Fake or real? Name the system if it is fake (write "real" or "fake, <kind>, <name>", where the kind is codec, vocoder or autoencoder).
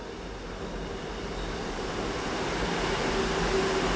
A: real